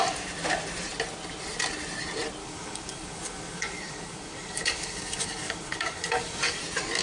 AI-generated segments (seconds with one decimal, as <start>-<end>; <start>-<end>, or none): 2.4-6.6